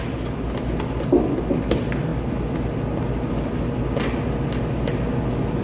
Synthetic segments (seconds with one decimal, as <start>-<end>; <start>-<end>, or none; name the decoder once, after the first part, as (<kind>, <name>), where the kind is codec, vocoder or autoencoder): none